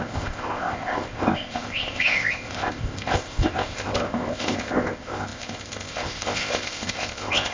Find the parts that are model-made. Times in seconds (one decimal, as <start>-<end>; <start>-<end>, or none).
0.0-7.5